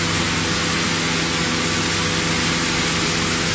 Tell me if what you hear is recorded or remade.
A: recorded